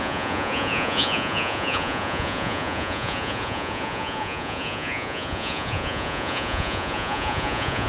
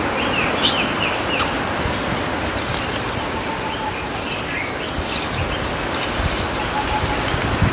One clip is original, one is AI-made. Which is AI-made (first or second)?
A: first